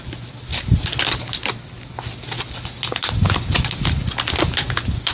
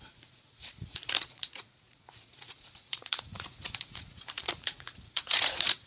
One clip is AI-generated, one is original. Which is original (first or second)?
first